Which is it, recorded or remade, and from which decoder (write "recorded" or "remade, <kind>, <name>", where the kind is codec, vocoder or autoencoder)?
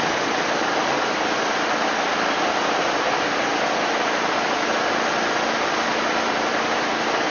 recorded